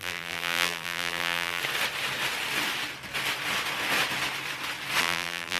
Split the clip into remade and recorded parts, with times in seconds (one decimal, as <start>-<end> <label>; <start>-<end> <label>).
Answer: 0.0-1.6 remade; 1.6-5.0 recorded; 5.0-5.6 remade